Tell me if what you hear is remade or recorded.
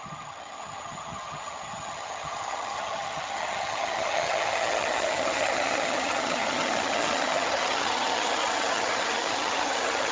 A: remade